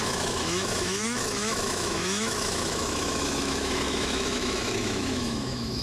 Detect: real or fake fake